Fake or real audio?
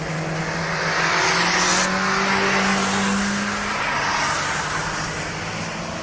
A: real